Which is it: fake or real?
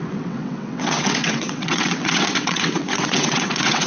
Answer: fake